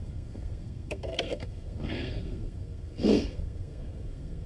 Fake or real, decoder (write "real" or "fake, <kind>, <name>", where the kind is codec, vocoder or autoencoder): fake, codec, SNAC